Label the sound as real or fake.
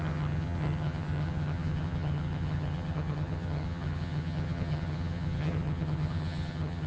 fake